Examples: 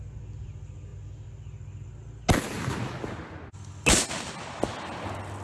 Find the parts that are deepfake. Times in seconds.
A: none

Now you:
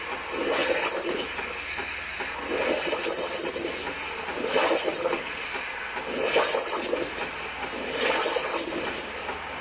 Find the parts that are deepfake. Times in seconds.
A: none

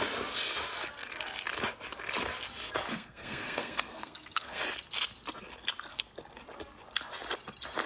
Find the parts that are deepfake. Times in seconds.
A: 2.9-4.6 (codec, SNAC)